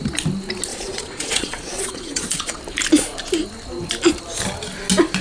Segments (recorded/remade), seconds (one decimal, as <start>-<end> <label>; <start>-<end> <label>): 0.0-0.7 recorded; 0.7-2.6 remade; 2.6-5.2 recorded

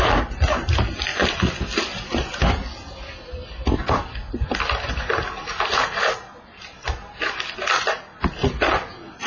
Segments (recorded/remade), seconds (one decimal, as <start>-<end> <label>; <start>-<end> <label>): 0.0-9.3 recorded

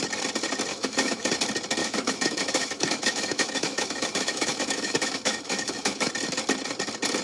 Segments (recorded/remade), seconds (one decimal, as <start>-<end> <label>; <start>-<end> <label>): 0.0-0.7 recorded; 0.7-1.3 remade; 1.3-1.8 recorded; 1.8-6.1 remade; 6.1-7.2 recorded